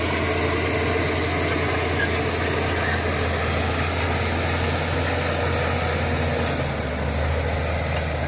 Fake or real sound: real